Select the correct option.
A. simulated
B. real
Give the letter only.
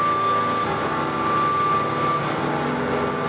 B